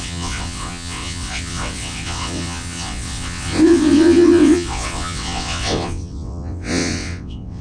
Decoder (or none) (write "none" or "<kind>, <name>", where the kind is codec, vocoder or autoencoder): vocoder, WaveNeXt